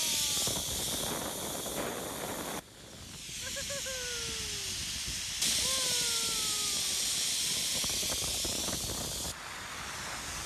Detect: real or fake real